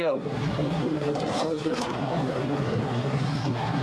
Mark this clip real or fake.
fake